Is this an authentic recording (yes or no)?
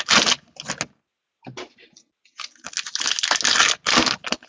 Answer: yes